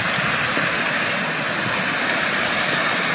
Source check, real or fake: real